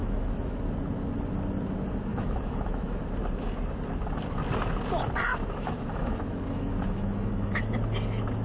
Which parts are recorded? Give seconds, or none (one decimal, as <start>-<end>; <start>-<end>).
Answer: 0.6-2.1; 3.0-5.3; 7.6-8.4

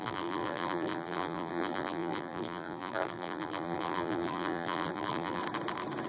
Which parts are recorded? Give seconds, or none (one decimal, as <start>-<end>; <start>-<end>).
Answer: 5.4-6.1

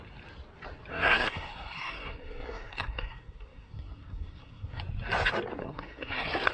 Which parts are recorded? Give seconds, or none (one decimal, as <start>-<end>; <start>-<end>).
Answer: 0.0-0.9; 4.8-5.6

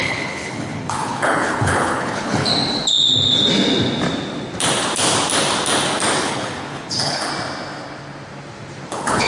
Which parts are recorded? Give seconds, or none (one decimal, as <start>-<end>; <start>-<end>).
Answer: 2.5-6.2; 7.3-8.9

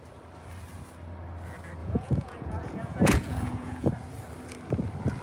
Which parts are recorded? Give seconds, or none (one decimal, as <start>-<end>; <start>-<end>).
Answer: 0.0-1.8; 3.9-5.2

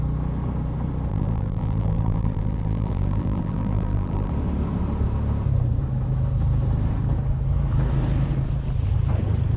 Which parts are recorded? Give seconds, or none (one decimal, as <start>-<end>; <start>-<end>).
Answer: 0.0-1.1; 4.3-9.6